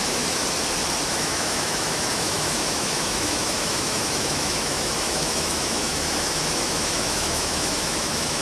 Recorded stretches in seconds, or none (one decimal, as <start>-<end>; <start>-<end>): 0.4-1.1